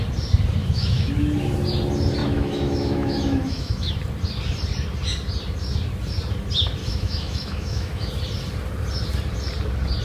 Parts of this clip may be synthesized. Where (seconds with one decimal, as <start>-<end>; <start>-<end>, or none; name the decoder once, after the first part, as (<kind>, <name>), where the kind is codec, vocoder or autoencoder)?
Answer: 0.6-1.1 (autoencoder, DAC-VAE); 2.2-3.9; 6.8-8.1